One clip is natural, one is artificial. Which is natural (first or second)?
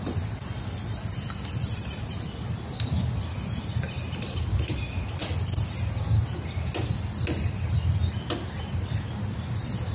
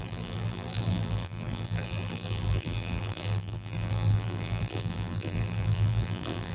first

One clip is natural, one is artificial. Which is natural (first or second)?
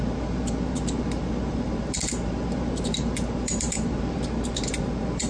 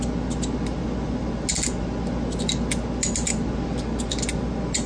second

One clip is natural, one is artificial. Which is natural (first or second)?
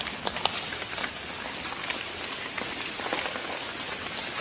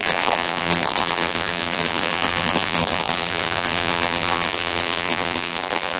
first